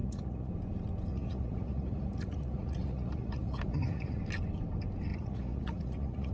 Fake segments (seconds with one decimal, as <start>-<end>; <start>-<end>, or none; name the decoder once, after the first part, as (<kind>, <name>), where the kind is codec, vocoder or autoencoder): 0.0-0.5 (vocoder, Vocos); 1.1-4.2; 5.1-6.3